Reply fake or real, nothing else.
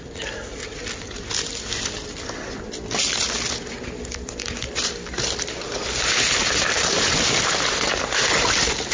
real